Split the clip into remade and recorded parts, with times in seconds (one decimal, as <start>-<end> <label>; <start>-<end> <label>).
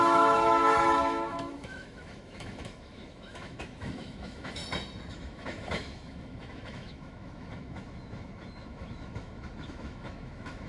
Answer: 0.0-4.6 remade; 4.6-5.1 recorded; 5.1-10.7 remade